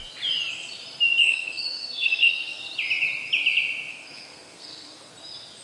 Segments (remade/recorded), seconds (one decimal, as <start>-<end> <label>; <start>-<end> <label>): 0.0-1.2 recorded; 1.2-2.6 remade; 2.6-3.9 recorded; 3.9-5.1 remade; 5.1-5.6 recorded